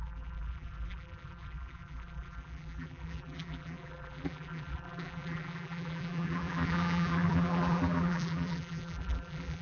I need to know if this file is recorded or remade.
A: remade